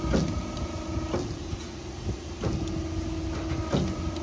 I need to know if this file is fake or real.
real